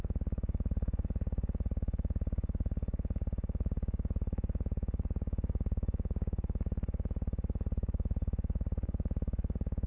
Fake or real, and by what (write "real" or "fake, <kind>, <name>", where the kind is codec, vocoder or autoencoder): fake, codec, DAC